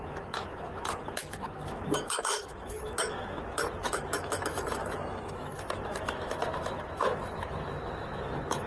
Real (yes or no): no